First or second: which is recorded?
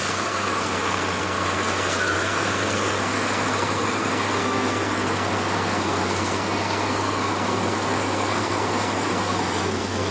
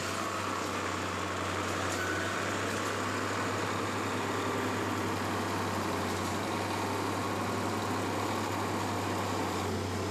second